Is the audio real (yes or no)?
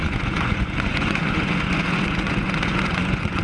no